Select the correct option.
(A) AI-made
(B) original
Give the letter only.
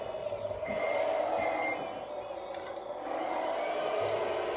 B